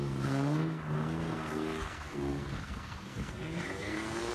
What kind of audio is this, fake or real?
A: fake